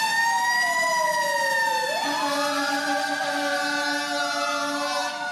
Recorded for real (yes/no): yes